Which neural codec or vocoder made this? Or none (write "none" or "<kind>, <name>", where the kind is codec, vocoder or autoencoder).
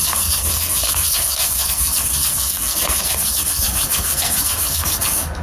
codec, SNAC